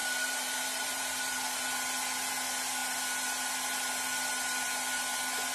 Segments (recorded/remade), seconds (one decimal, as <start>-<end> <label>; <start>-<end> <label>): 0.0-1.4 remade; 1.4-5.5 recorded